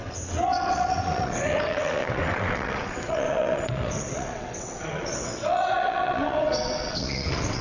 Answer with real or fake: fake